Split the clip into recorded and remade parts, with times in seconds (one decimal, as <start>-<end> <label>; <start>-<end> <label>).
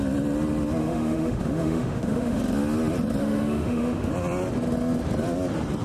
0.0-0.8 recorded; 0.8-2.4 remade; 2.4-3.2 recorded; 3.2-4.1 remade; 4.1-5.8 recorded